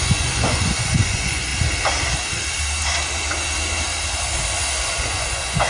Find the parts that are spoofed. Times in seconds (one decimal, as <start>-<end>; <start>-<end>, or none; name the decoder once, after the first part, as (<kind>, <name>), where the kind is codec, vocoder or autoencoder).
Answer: 0.0-1.5 (vocoder, Vocos); 4.9-5.7